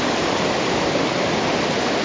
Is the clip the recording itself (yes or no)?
yes